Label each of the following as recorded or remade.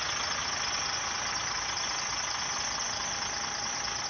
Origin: recorded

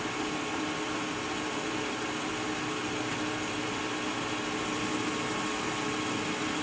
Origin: recorded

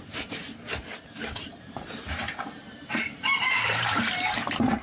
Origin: remade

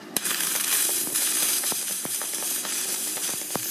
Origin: remade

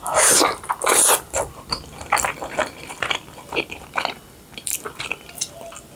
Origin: remade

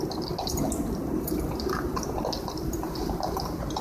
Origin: recorded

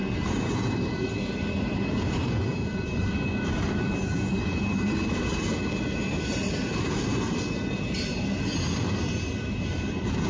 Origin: remade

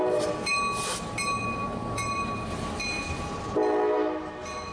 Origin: recorded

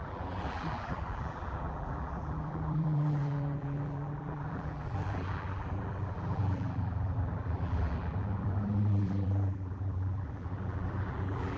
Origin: remade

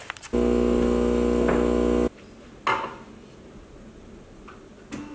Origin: recorded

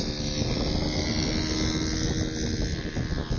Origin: recorded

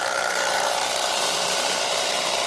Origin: remade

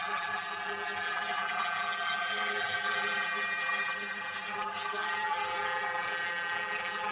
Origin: remade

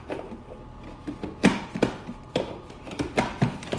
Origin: remade